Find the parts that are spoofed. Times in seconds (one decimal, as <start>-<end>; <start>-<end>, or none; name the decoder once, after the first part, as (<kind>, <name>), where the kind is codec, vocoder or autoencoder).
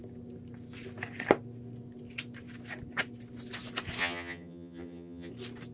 4.0-5.3 (vocoder, HiFi-GAN)